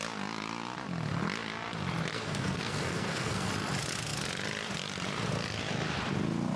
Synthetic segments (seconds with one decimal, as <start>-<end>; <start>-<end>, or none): 2.1-3.5